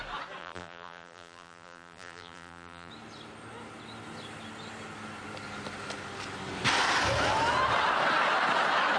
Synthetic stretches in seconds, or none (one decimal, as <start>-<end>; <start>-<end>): 0.4-2.9